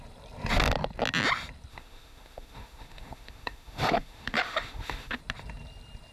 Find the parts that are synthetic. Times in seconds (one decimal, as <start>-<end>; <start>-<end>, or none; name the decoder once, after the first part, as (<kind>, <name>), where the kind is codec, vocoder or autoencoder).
1.7-5.2 (autoencoder, DAC-VAE)